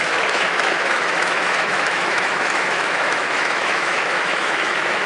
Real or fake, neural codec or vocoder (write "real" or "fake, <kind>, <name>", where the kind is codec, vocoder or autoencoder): fake, autoencoder, DAC-VAE